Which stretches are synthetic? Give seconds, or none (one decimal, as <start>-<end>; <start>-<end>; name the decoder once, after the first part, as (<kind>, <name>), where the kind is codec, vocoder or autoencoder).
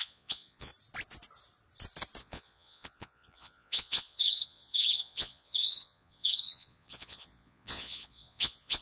0.0-0.7 (vocoder, Vocos); 2.2-8.8